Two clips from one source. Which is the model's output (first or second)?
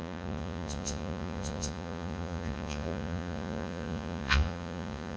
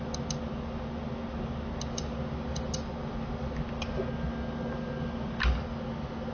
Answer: first